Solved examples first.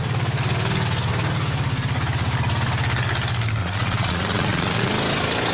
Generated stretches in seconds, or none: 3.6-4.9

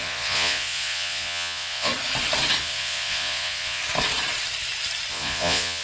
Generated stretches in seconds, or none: 0.0-1.9; 2.6-3.8; 5.1-5.8

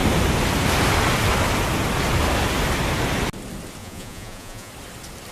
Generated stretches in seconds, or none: 3.8-4.7

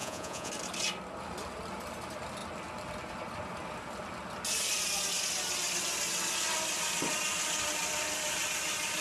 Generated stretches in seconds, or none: 0.0-0.5

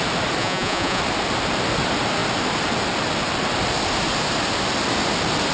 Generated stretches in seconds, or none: 0.4-1.0

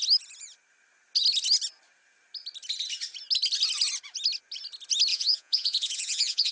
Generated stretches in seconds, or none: 5.1-6.5

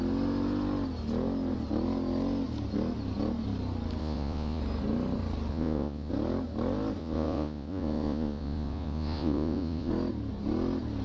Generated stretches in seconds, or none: 4.0-4.6; 5.5-6.1; 7.0-9.9